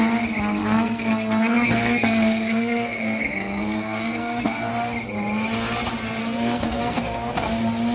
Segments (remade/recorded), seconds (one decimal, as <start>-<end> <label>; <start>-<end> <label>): 0.0-0.6 recorded; 0.6-4.7 remade; 4.7-6.2 recorded; 6.2-7.3 remade; 7.3-7.9 recorded